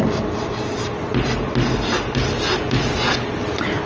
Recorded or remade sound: recorded